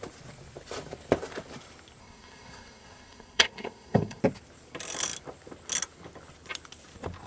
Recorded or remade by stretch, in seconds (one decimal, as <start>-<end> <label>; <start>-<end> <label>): 0.0-2.0 recorded; 2.0-4.2 remade; 4.2-7.3 recorded